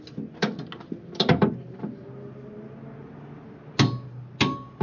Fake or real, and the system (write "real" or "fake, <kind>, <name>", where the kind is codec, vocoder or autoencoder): real